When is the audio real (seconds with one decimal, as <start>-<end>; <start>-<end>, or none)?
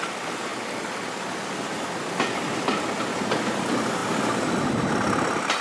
0.0-5.6